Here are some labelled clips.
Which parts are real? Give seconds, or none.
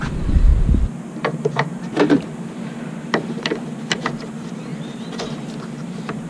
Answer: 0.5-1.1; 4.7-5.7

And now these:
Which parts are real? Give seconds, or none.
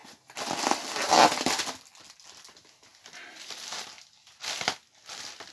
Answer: 0.0-5.5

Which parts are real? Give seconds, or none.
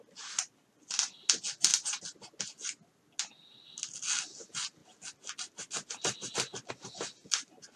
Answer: 0.0-7.8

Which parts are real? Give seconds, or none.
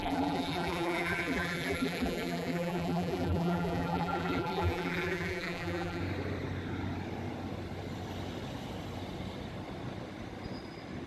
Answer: 6.0-11.1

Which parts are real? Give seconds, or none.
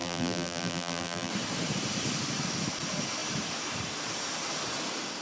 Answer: 1.3-5.2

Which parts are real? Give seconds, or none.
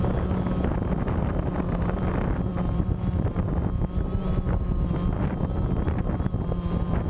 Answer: 0.0-2.5; 3.0-7.1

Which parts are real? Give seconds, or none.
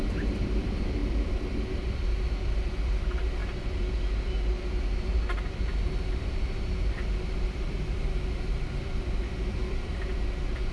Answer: 3.4-7.3